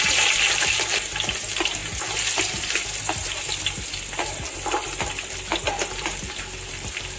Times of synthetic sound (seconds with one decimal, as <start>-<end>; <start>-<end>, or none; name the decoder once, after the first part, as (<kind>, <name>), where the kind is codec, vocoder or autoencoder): none